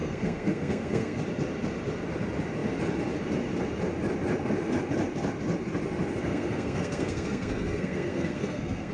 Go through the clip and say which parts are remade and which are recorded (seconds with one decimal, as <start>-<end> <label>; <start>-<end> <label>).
0.0-1.2 remade; 1.2-6.3 recorded; 6.3-8.9 remade